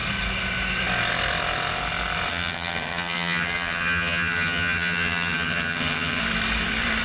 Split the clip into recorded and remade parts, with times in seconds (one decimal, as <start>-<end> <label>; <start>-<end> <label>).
0.0-2.3 recorded; 2.3-6.2 remade; 6.2-7.0 recorded